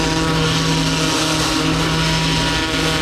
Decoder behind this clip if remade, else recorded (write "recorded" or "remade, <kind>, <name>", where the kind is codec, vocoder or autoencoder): recorded